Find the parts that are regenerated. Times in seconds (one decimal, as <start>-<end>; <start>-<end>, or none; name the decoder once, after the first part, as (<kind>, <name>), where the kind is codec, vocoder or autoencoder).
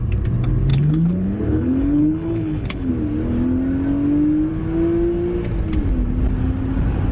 0.7-2.9 (codec, HILCodec)